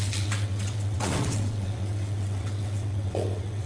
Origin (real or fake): fake